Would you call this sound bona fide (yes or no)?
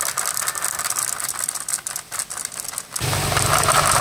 yes